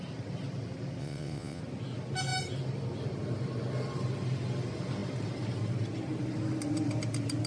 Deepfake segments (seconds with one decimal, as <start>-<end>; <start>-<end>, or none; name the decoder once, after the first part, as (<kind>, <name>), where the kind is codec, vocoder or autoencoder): 1.0-1.6 (vocoder, WaveNeXt)